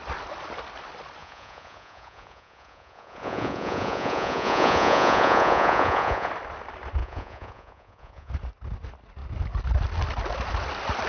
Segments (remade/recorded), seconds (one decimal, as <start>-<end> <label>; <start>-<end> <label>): 0.0-1.2 recorded; 1.2-6.3 remade; 6.3-7.0 recorded; 7.0-8.3 remade; 8.3-11.1 recorded